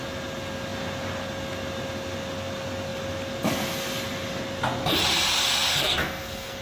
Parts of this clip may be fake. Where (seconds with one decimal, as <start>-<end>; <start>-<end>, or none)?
5.7-6.6